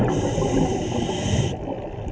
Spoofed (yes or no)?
no